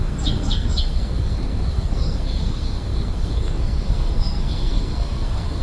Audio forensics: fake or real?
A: fake